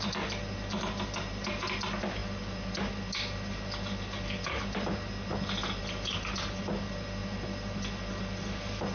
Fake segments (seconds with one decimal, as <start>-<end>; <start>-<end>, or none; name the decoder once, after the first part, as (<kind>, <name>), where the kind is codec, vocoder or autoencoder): none